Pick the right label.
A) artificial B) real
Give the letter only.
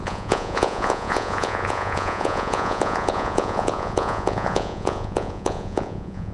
A